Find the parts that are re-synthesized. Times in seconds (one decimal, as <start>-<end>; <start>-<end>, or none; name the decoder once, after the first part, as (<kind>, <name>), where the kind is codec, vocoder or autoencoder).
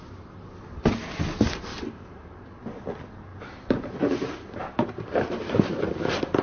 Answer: 1.7-2.6 (vocoder, BigVGAN v2); 3.3-5.8